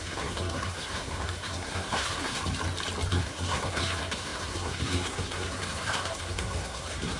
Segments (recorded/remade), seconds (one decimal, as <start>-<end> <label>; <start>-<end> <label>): 0.0-2.4 remade; 2.4-3.1 recorded; 3.1-7.2 remade